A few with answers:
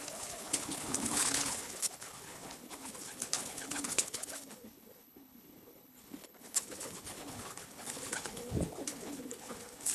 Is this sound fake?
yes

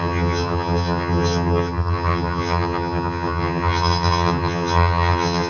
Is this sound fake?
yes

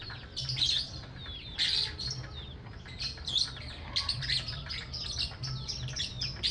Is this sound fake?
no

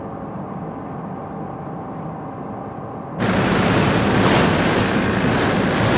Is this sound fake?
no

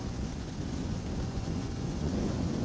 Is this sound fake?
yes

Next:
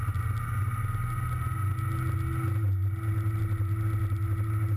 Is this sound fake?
no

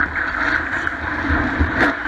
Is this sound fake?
no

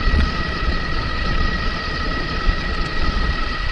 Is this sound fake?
yes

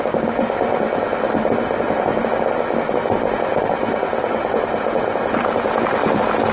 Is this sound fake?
no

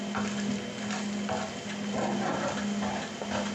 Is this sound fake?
no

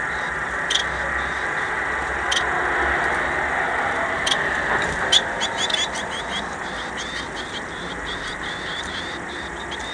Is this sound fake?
no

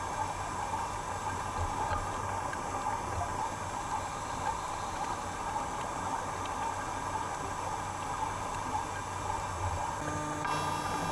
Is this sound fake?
no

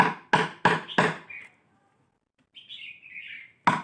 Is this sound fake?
no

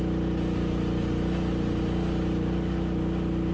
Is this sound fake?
no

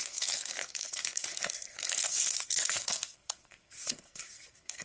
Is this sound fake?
yes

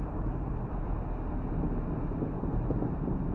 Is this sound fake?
yes